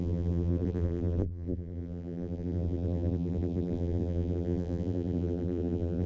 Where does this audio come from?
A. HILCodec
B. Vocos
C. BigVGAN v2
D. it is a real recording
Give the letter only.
C